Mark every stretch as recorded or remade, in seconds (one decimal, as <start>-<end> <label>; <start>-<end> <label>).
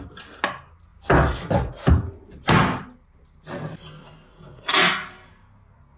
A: 0.0-4.3 recorded; 4.3-4.9 remade; 4.9-6.0 recorded